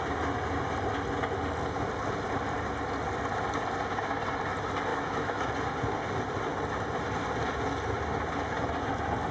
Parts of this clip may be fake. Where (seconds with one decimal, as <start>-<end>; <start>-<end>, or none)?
4.9-5.5

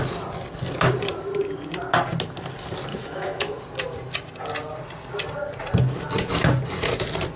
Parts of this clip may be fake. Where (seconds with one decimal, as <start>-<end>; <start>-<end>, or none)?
2.9-3.6